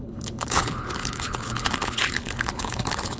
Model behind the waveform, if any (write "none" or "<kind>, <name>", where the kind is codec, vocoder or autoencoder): codec, HILCodec